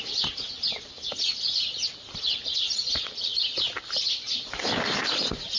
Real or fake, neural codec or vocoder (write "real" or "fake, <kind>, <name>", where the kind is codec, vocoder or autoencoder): real